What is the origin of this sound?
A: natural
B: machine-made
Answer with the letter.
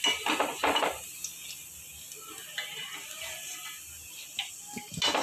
A